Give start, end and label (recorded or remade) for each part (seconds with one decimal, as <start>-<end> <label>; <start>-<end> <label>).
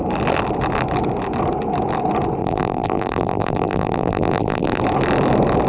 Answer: 0.0-2.4 recorded; 2.4-4.8 remade; 4.8-5.7 recorded